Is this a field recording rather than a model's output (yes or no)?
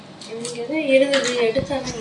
yes